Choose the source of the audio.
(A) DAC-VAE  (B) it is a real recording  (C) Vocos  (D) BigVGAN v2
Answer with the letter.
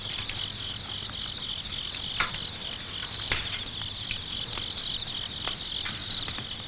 B